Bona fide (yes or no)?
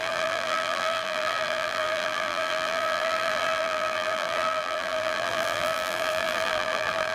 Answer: no